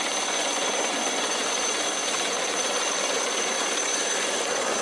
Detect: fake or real fake